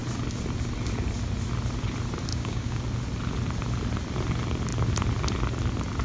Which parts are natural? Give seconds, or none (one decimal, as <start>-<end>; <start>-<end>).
0.0-2.3; 2.8-6.0